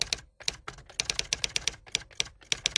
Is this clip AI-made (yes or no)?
no